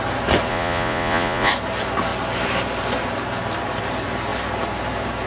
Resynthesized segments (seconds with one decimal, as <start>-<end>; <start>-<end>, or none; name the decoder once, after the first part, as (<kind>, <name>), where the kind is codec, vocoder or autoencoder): 0.5-1.5 (vocoder, Vocos)